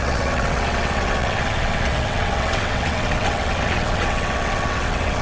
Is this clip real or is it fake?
fake